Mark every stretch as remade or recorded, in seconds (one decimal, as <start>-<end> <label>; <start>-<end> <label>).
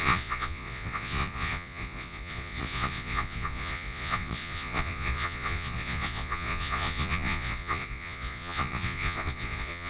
0.0-9.9 remade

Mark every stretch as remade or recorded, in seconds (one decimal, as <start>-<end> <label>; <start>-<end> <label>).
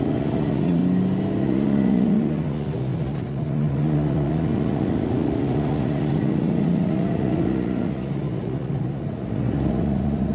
0.0-0.8 remade; 0.8-1.4 recorded; 1.4-10.3 remade